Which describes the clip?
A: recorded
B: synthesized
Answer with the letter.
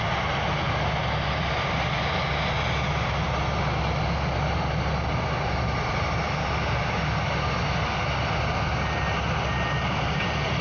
A